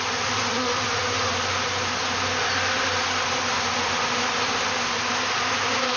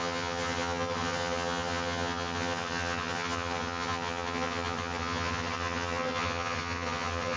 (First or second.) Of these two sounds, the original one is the first